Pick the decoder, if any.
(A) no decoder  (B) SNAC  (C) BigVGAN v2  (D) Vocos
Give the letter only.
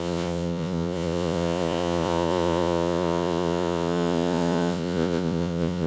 D